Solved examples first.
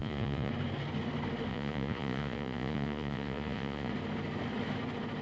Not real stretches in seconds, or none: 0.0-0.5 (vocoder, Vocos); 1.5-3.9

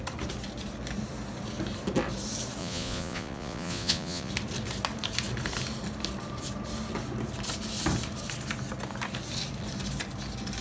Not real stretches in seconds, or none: 2.6-4.3 (vocoder, Vocos)

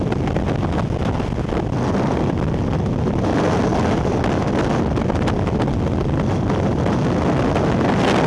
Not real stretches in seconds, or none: none